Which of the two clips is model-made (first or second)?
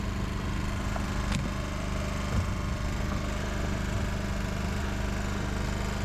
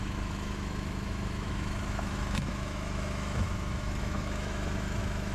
second